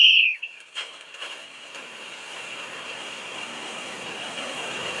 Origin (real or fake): fake